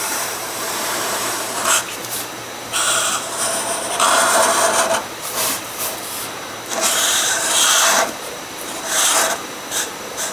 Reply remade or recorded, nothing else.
remade